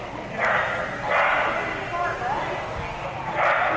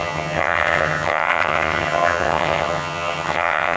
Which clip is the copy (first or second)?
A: second